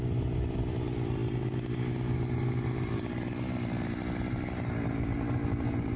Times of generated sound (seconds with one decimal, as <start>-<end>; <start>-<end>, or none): none